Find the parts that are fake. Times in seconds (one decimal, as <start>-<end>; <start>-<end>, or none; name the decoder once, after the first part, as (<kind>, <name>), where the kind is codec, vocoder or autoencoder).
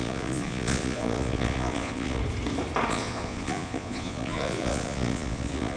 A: 0.0-2.2 (vocoder, Vocos); 2.9-5.8